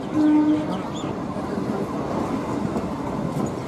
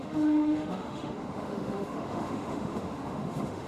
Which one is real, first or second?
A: first